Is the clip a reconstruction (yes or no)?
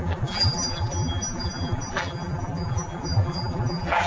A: yes